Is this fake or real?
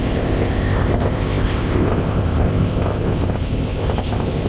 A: fake